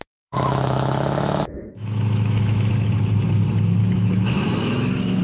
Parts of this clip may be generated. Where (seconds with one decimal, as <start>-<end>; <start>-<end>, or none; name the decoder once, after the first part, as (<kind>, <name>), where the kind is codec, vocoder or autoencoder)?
0.0-2.7 (autoencoder, DAC-VAE); 3.8-5.2